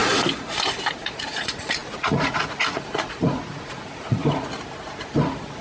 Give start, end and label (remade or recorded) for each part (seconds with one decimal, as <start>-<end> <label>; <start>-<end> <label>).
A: 0.0-1.1 recorded; 1.1-4.2 remade; 4.2-5.6 recorded